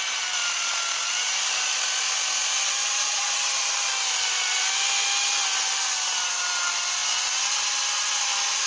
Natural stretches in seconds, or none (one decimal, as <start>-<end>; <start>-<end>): 0.0-2.8; 3.3-8.7